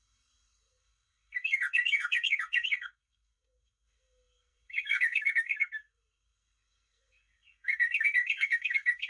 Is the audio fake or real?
fake